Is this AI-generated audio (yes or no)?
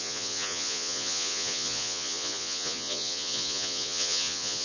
yes